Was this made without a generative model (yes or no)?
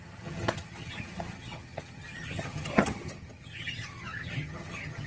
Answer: no